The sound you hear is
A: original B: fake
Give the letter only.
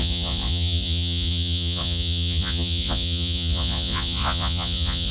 B